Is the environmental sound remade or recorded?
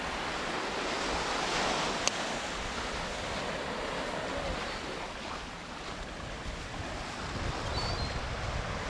recorded